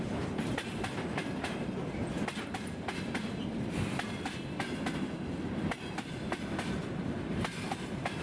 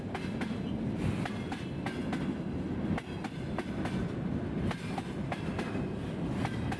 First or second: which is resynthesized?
first